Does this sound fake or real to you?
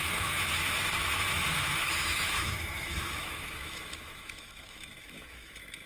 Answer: fake